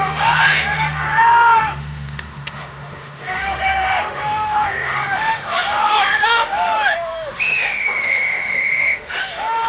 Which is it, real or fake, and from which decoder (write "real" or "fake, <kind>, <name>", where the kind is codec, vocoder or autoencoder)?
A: fake, autoencoder, DAC-VAE